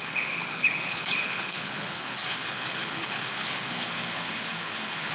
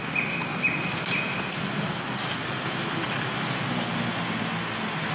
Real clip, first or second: second